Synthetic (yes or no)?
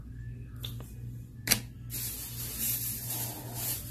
no